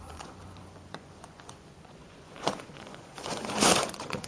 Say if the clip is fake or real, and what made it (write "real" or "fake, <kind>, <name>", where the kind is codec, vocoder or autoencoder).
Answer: fake, vocoder, Vocos